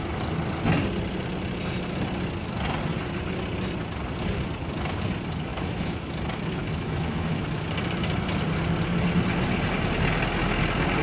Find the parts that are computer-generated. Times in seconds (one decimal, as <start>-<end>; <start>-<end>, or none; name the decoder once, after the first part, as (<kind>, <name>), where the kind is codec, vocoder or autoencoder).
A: 5.5-6.0 (autoencoder, DAC-VAE); 6.6-7.4